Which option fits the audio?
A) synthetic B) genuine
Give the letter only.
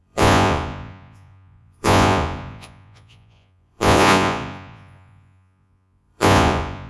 A